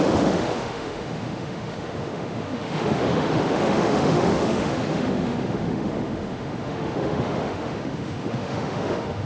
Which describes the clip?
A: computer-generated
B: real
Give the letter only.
A